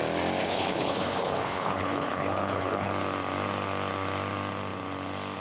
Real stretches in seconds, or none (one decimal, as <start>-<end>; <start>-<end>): 0.0-0.4; 2.9-5.4